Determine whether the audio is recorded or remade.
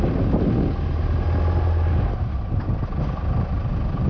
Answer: recorded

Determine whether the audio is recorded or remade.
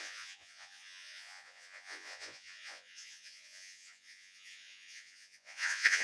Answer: remade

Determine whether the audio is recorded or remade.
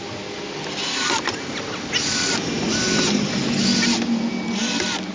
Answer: recorded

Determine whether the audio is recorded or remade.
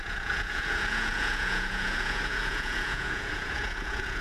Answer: remade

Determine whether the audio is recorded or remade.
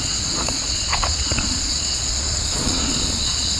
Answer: remade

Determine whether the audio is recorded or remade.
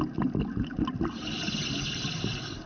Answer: recorded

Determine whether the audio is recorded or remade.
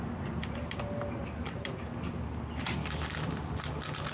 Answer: recorded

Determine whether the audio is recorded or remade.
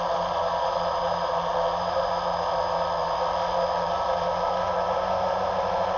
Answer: recorded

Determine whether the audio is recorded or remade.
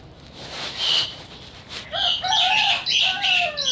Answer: recorded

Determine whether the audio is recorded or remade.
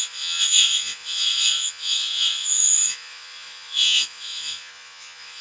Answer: remade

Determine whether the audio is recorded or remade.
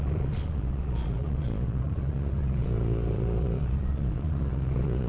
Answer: remade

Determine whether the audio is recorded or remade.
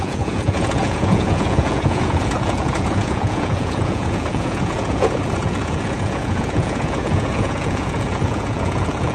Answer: remade